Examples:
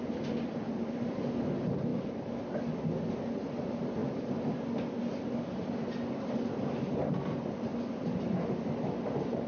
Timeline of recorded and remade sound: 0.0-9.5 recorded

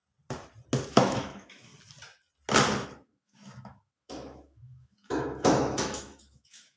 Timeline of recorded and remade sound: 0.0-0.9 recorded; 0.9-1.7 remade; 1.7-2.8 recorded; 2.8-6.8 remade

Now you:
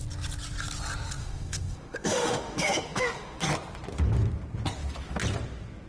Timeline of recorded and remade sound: 0.0-1.2 recorded; 1.2-3.4 remade; 3.4-5.9 recorded

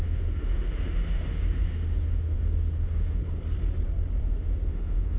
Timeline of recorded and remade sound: 0.0-3.2 remade; 3.2-4.2 recorded; 4.2-5.2 remade

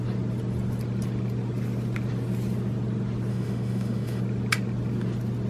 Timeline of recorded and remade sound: 0.0-3.3 recorded; 3.3-4.2 remade; 4.2-5.5 recorded